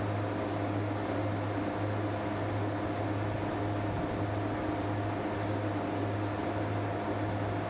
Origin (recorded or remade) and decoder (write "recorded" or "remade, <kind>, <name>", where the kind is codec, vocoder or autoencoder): recorded